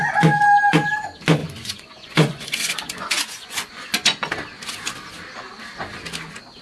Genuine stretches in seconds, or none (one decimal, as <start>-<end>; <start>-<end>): 0.0-1.4; 4.3-6.6